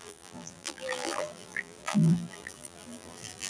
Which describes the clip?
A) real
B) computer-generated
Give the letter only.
B